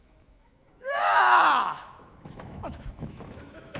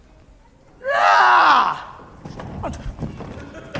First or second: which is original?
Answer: second